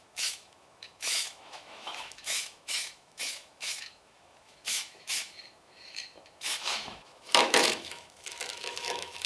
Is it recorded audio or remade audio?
remade